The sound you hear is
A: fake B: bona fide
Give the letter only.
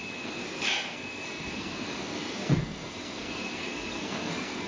A